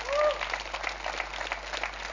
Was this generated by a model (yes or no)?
no